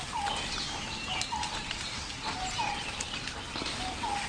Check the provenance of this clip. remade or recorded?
recorded